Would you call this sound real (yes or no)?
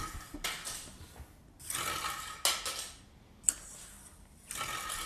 yes